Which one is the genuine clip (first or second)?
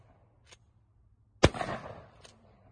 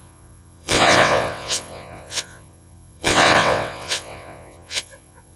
first